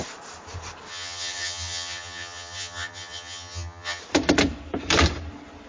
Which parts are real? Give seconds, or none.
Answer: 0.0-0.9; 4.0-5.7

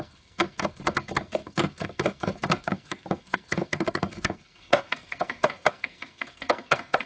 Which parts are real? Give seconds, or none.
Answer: none

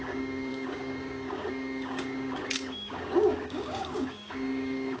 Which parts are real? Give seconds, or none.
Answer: none

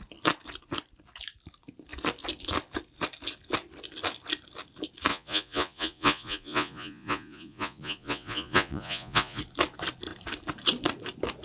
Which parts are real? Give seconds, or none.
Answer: 0.0-5.1; 9.4-11.4